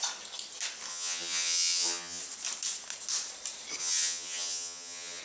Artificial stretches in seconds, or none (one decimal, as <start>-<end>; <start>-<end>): 0.9-2.2; 3.8-5.2